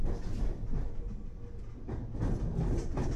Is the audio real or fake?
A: real